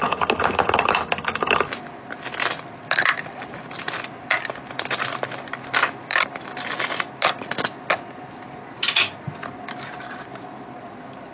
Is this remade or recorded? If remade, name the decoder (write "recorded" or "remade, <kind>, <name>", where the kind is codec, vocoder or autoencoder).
recorded